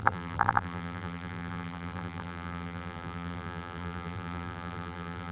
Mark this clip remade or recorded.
remade